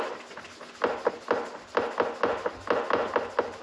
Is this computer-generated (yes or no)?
no